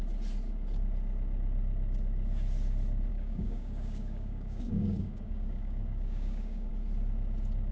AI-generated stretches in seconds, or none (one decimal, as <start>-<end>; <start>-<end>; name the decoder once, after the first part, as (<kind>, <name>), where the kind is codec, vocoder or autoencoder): 3.1-6.7 (codec, DAC)